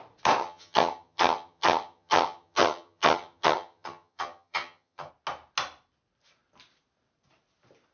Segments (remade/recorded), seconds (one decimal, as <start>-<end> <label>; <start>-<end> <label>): 0.0-0.4 recorded; 0.4-5.1 remade; 5.1-7.9 recorded